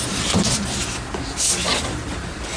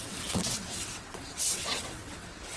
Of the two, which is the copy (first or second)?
second